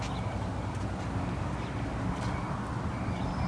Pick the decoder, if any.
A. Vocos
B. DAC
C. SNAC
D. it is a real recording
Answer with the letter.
D